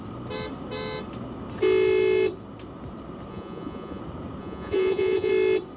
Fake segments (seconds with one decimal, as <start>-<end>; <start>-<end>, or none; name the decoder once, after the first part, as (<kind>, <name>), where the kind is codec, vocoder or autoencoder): 3.3-4.0 (vocoder, Vocos); 4.4-5.3